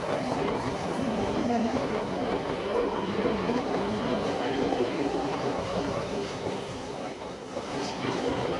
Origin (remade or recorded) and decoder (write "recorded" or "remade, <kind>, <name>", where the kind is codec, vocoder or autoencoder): remade, codec, SNAC